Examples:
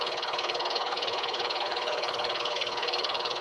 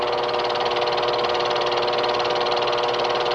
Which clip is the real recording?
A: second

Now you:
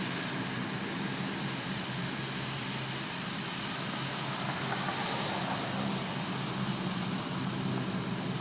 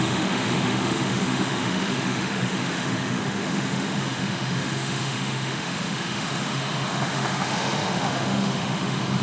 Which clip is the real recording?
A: first